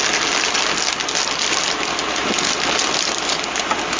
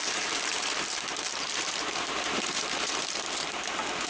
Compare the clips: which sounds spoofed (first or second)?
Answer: second